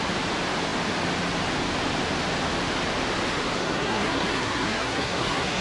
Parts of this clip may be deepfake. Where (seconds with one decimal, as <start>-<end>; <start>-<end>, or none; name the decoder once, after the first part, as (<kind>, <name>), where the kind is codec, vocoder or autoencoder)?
3.6-5.6 (codec, SNAC)